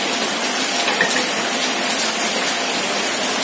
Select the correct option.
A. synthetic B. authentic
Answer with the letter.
B